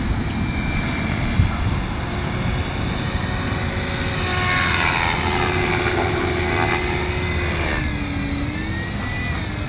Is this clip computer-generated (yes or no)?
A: no